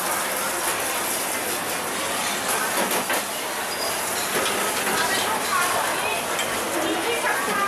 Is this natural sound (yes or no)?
yes